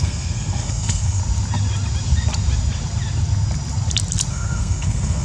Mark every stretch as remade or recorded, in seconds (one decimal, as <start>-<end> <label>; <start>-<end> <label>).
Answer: 0.0-1.2 remade; 1.2-4.3 recorded; 4.3-5.2 remade